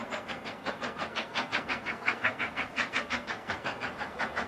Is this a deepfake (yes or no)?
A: yes